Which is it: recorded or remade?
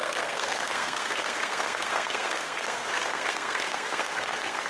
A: remade